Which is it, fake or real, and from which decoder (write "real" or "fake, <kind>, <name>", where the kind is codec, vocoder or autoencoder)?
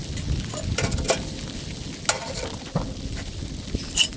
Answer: real